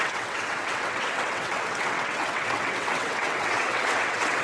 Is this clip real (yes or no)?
no